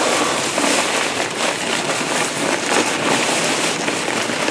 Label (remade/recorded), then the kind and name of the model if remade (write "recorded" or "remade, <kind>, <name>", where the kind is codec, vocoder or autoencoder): recorded